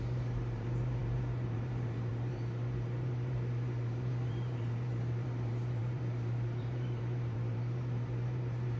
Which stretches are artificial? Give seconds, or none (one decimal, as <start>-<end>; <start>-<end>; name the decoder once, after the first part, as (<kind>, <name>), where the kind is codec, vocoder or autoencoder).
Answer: 0.0-8.8 (vocoder, BigVGAN v2)